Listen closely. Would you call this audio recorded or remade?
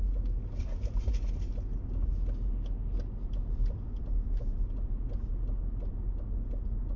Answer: recorded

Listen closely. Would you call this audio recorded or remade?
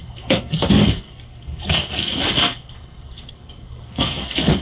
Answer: remade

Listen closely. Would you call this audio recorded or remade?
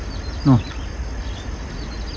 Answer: recorded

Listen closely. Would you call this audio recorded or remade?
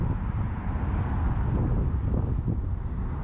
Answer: recorded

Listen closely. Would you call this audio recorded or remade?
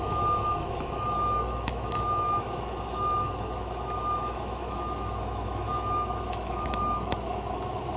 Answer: remade